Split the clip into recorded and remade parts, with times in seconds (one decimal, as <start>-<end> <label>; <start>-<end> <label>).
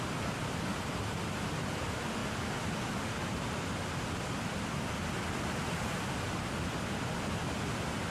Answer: 0.0-0.7 recorded; 0.7-1.5 remade; 1.5-8.1 recorded